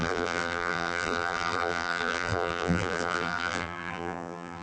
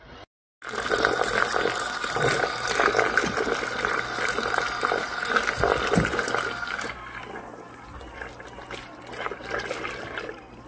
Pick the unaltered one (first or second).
second